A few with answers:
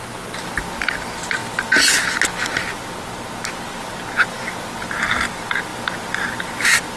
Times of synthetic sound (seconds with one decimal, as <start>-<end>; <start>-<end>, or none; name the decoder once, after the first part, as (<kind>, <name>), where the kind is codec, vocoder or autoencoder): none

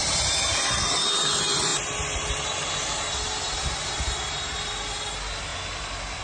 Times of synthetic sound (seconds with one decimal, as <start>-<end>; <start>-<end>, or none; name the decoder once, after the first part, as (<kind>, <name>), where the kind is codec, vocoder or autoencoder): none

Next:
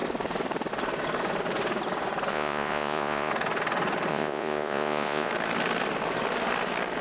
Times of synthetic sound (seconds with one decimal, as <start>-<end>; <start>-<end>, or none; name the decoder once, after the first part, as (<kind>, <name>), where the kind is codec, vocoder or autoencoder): 2.3-3.3 (vocoder, Vocos); 4.1-5.3

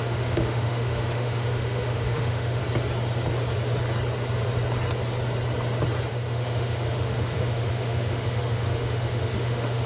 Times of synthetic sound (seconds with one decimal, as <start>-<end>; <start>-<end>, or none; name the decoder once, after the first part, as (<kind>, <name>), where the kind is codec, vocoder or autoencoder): 0.0-2.6 (autoencoder, DAC-VAE); 6.1-9.9

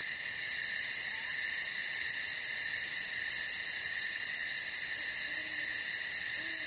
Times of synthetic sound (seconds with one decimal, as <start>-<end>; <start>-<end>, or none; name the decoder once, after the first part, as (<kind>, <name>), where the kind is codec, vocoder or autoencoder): 3.8-4.4 (vocoder, Vocos)

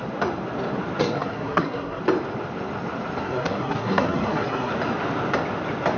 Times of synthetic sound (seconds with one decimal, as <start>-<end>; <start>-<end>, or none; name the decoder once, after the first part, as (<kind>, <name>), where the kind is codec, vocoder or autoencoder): 1.0-2.0 (codec, SNAC); 3.2-4.7

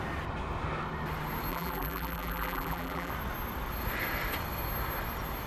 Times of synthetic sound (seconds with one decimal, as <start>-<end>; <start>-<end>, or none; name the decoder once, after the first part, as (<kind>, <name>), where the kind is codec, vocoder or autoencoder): 1.5-3.1 (vocoder, BigVGAN v2)

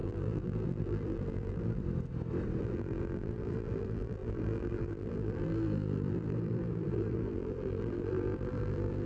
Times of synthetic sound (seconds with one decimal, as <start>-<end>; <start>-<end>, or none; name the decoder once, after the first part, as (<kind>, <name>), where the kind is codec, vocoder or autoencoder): 0.0-1.8 (vocoder, BigVGAN v2); 2.6-9.1